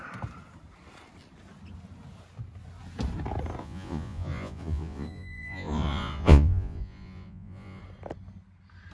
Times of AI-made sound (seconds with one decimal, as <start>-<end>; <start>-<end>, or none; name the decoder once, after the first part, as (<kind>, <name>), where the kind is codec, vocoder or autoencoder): 3.6-7.8 (vocoder, Vocos)